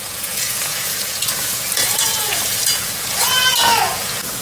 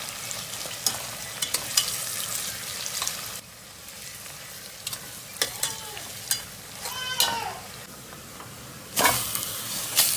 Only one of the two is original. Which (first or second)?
second